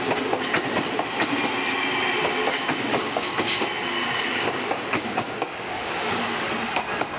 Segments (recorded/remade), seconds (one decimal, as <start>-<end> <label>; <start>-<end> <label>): 0.0-2.9 recorded; 2.9-3.6 remade; 3.6-4.3 recorded; 4.3-6.5 remade; 6.5-7.2 recorded